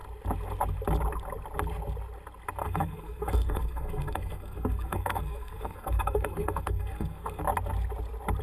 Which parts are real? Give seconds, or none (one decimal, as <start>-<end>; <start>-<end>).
0.0-2.6; 7.4-8.4